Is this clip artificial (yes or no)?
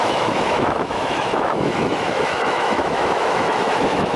yes